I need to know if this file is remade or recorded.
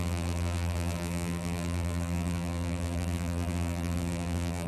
remade